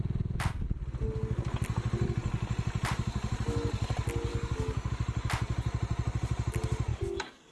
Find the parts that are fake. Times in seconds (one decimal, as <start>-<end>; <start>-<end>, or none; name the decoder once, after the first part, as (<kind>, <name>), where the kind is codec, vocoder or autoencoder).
4.3-4.9 (codec, DAC); 6.9-7.5